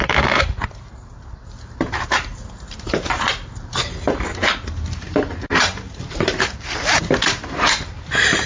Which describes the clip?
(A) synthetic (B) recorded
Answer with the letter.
A